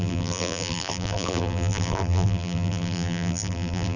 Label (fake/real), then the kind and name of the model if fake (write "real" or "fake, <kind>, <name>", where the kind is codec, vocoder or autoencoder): fake, vocoder, BigVGAN v2